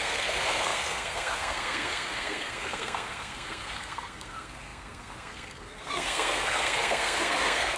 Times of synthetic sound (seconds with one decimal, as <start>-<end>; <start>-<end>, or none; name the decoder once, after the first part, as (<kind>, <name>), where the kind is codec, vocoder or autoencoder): 0.0-7.8 (codec, SNAC)